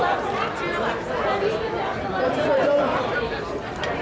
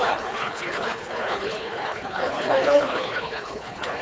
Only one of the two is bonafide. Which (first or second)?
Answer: first